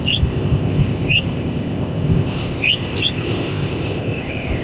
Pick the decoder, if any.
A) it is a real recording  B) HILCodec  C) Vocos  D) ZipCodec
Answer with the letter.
D